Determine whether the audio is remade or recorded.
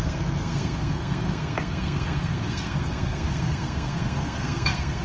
remade